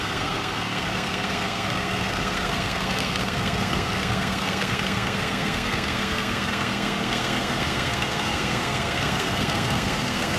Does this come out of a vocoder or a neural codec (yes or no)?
yes